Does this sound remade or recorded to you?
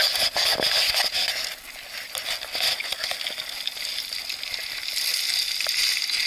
recorded